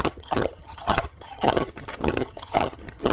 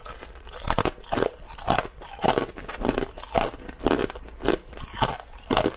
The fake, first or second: first